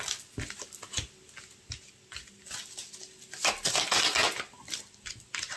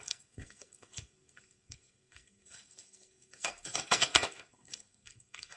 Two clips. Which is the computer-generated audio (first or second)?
second